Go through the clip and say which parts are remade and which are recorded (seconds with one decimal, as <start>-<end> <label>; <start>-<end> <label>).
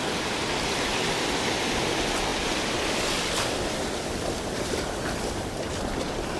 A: 0.0-6.4 recorded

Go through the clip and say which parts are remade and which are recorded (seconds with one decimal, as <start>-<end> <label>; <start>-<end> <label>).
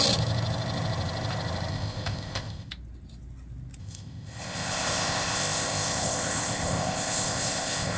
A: 0.0-1.7 recorded; 1.7-2.7 remade; 2.7-3.8 recorded; 3.8-8.0 remade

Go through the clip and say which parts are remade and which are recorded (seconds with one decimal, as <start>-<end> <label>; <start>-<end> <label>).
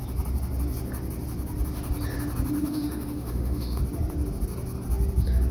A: 0.0-2.6 recorded; 2.6-3.8 remade; 3.8-5.5 recorded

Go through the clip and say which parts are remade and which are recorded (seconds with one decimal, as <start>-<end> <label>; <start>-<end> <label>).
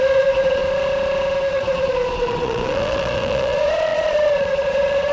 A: 0.0-0.6 remade; 0.6-1.5 recorded; 1.5-5.1 remade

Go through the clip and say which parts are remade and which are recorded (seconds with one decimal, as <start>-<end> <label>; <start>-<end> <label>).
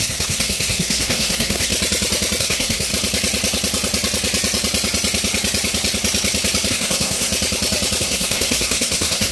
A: 0.0-1.7 remade; 1.7-2.4 recorded; 2.4-2.9 remade; 2.9-6.7 recorded; 6.7-7.3 remade; 7.3-8.0 recorded; 8.0-9.3 remade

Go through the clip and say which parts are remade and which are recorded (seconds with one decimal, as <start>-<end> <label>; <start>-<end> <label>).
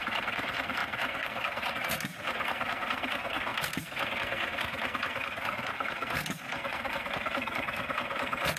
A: 0.0-8.6 remade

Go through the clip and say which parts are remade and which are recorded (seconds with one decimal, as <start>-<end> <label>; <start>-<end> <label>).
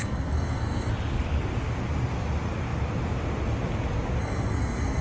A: 0.0-0.9 remade; 0.9-4.2 recorded; 4.2-5.0 remade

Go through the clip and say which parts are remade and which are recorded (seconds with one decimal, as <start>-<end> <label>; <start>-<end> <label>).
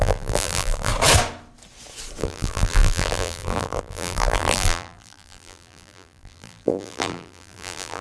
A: 0.0-0.9 remade; 0.9-2.2 recorded; 2.2-8.0 remade